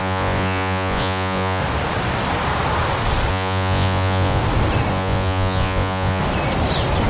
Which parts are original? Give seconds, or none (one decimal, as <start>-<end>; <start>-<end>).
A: 1.6-3.3; 4.4-4.9; 6.2-7.1